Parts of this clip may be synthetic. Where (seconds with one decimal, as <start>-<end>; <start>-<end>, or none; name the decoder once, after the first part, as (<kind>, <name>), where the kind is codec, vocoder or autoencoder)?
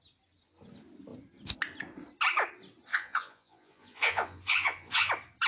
2.9-5.1 (vocoder, Vocos)